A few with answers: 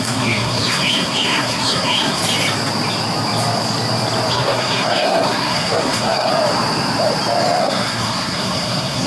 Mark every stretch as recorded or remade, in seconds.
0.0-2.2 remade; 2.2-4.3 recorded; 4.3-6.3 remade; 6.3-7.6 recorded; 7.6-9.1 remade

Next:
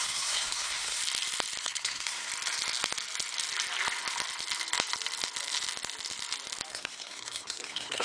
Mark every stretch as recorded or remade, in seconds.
0.0-1.0 remade; 1.0-1.6 recorded; 1.6-2.3 remade; 2.3-6.7 recorded; 6.7-8.0 remade

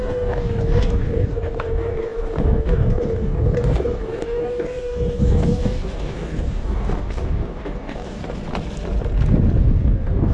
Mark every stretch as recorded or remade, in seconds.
0.0-8.2 remade; 8.2-9.6 recorded; 9.6-10.3 remade

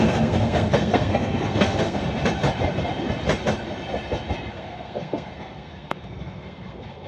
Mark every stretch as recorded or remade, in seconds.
0.0-2.0 remade; 2.0-4.5 recorded; 4.5-7.1 remade